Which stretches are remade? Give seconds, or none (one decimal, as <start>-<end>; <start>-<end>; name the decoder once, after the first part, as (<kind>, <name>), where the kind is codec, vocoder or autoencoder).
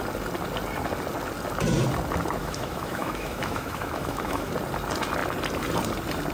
2.4-4.5 (autoencoder, DAC-VAE)